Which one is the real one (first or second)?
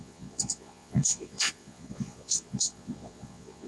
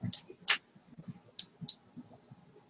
second